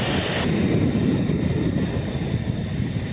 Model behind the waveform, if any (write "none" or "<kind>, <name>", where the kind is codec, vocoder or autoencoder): none